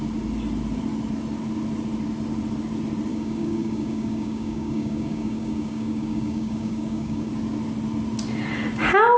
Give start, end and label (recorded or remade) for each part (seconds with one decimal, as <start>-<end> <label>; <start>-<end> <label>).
0.0-3.1 recorded; 3.1-7.3 remade; 7.3-9.2 recorded